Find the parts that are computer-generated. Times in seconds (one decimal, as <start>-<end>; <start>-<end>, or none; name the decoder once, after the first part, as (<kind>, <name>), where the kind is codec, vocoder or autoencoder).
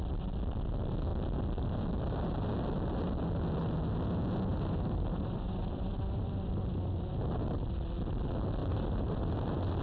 4.5-6.5 (vocoder, BigVGAN v2); 8.6-9.8